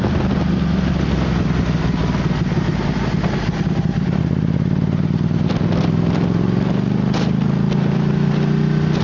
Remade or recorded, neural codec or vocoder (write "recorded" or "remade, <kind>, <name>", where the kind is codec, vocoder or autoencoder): recorded